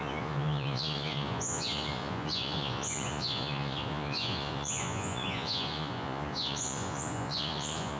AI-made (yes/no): yes